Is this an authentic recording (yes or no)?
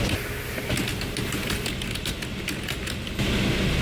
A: yes